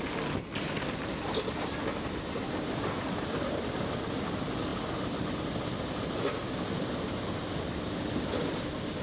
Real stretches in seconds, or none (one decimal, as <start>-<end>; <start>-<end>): 0.0-9.0